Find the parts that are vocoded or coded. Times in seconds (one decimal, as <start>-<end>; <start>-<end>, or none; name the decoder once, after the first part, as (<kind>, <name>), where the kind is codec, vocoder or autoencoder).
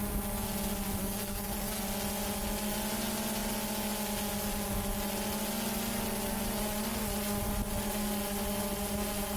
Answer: 1.0-1.8 (codec, SNAC)